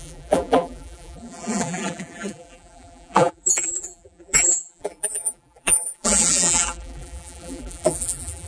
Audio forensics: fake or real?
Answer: fake